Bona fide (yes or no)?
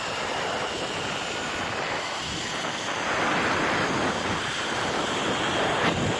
no